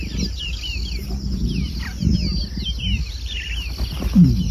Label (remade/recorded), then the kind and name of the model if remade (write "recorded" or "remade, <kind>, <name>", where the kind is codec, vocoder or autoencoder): recorded